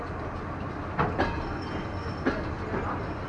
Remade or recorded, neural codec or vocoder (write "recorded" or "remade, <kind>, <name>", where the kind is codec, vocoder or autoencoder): recorded